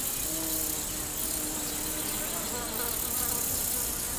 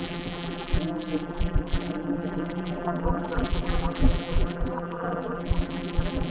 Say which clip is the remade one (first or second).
second